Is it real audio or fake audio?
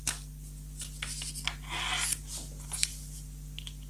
real